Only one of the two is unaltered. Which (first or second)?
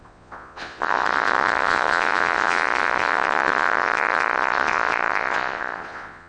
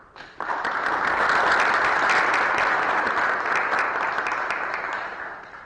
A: second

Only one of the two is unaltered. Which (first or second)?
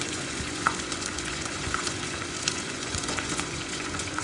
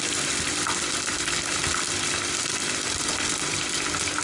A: second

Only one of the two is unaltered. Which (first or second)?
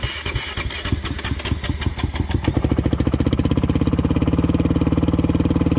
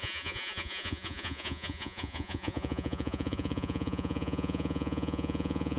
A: first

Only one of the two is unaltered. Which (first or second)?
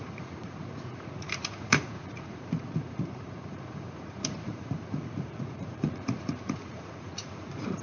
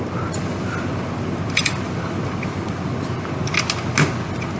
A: second